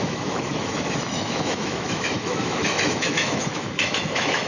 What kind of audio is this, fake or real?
fake